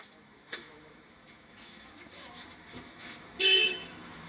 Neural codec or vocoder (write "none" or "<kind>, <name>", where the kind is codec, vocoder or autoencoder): autoencoder, DAC-VAE